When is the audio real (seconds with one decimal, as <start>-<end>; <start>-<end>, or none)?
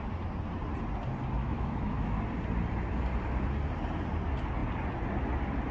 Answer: 0.0-1.4; 2.2-5.7